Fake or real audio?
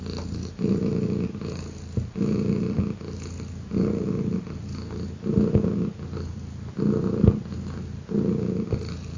real